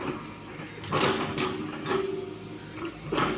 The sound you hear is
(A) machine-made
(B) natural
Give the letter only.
B